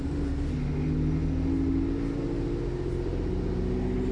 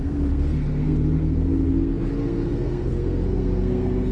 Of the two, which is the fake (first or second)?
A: second